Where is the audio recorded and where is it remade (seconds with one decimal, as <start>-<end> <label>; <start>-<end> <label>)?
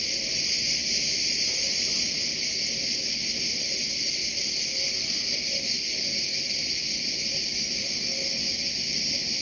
0.0-9.4 recorded